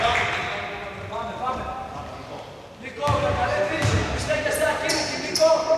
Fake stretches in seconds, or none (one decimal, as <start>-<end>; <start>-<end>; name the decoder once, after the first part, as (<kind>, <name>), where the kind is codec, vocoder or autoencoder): 0.8-2.4 (vocoder, BigVGAN v2); 3.3-5.8